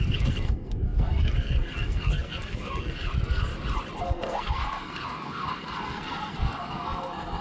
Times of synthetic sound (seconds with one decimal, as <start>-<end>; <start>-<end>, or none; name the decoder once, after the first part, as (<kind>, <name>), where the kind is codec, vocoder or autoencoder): 0.0-3.5 (codec, SNAC); 4.0-7.4